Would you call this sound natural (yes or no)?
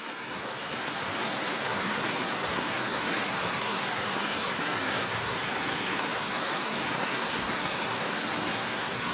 no